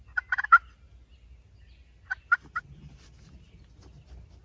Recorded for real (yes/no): yes